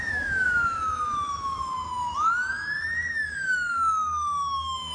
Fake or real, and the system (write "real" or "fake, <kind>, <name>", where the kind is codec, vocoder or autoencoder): fake, autoencoder, DAC-VAE